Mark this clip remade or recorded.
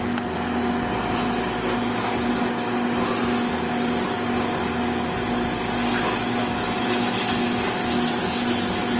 recorded